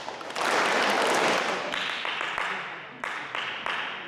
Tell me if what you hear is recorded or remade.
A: recorded